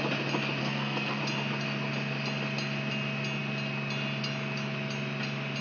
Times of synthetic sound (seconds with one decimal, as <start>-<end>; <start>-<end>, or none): 0.6-1.2